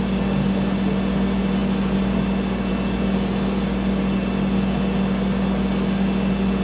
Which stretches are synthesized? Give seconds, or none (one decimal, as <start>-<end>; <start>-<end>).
none